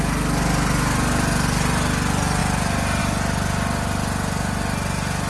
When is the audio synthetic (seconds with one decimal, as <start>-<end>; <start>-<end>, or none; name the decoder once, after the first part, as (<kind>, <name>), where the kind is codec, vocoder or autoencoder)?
none